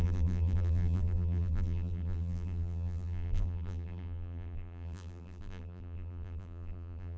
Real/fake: fake